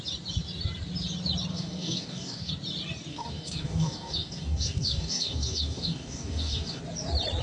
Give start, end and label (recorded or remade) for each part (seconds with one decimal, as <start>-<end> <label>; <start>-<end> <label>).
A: 0.0-1.5 recorded; 1.5-2.5 remade; 2.5-3.1 recorded; 3.1-6.8 remade; 6.8-7.4 recorded